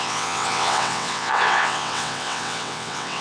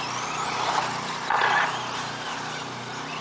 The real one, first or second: second